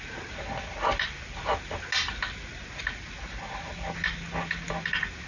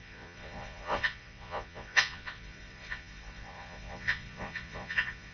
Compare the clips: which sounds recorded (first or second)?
first